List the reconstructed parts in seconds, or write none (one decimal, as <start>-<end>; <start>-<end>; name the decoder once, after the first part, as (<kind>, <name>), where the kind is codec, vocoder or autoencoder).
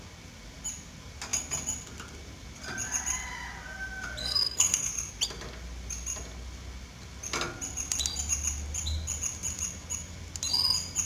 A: 4.2-4.9 (codec, SNAC)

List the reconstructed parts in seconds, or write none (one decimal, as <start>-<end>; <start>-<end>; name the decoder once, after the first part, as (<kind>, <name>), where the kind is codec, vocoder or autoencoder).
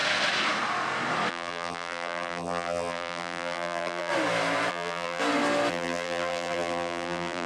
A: 1.3-4.1 (vocoder, BigVGAN v2); 4.7-5.2; 5.7-7.5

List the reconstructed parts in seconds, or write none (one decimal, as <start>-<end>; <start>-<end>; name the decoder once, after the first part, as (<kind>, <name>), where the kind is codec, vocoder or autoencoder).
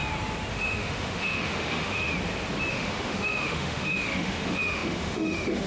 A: 0.5-2.1 (autoencoder, DAC-VAE); 2.7-5.7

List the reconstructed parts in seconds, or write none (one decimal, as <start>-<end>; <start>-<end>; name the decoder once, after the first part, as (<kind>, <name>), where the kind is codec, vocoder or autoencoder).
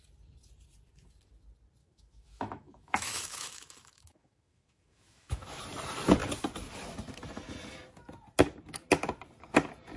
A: 1.8-5.6 (autoencoder, DAC-VAE)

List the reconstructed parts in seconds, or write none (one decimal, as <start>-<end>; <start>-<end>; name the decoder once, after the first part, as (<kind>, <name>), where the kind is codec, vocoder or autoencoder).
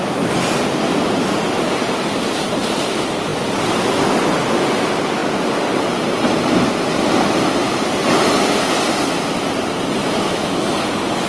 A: 10.0-10.6 (autoencoder, DAC-VAE)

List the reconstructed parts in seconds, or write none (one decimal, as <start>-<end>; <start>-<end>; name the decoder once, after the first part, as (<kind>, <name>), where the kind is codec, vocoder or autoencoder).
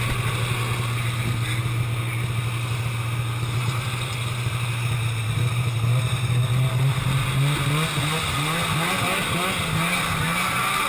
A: 3.6-6.4 (vocoder, BigVGAN v2)